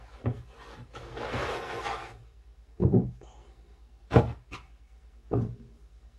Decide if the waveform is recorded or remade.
remade